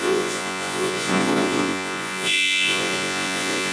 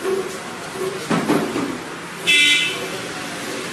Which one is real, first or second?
second